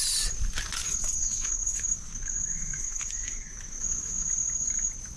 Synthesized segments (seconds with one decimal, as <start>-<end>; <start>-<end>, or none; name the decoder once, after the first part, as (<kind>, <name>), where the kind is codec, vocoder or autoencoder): 1.2-4.3 (autoencoder, DAC-VAE)